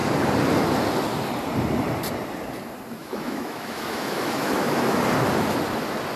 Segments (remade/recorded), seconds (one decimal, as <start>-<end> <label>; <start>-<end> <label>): 0.0-3.0 recorded; 3.0-5.0 remade; 5.0-6.2 recorded